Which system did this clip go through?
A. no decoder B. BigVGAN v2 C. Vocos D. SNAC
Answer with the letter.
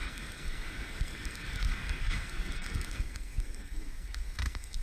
D